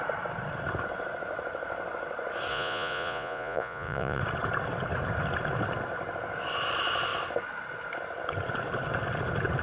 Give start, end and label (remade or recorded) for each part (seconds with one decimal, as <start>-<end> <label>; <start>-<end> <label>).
0.0-2.5 recorded; 2.5-4.2 remade; 4.2-9.6 recorded